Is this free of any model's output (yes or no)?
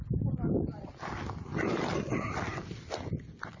yes